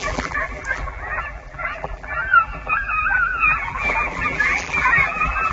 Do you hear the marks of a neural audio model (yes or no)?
yes